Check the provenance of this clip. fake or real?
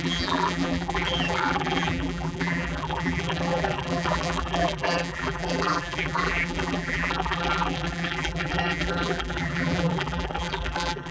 fake